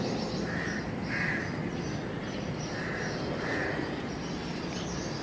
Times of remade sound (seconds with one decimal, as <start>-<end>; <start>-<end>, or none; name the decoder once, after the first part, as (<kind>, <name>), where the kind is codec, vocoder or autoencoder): none